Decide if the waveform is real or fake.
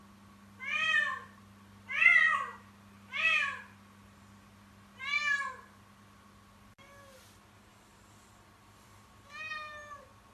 real